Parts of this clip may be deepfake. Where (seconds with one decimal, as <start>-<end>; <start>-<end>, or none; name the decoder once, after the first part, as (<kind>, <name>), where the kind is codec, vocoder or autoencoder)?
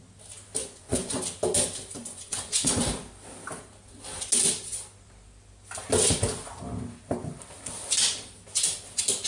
0.6-1.2 (vocoder, Vocos); 2.0-2.7